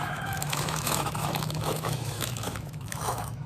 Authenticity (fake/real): fake